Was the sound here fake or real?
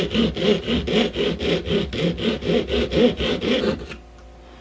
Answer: real